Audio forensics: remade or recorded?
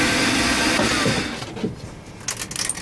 recorded